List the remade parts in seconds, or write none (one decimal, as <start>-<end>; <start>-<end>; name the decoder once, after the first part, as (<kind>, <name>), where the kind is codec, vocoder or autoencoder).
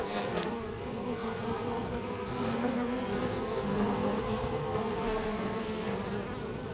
0.0-5.9 (codec, SNAC)